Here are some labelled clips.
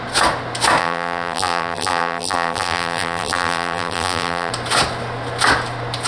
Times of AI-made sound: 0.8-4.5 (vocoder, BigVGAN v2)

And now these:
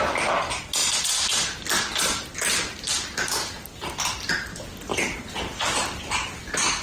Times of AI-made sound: none